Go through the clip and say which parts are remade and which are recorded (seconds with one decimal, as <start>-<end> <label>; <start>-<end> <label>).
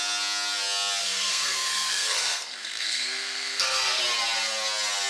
0.0-1.0 recorded; 1.0-4.0 remade; 4.0-5.1 recorded